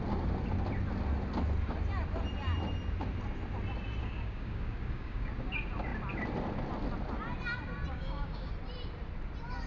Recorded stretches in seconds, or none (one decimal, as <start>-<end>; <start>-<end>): 0.0-4.0; 5.3-7.9; 8.5-9.7